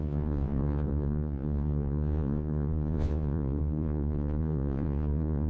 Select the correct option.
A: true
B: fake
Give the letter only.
B